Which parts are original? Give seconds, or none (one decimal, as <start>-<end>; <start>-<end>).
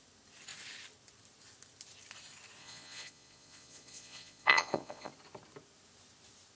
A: 0.0-2.6; 5.1-6.6